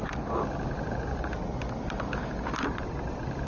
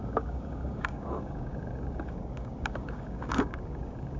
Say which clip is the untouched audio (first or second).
first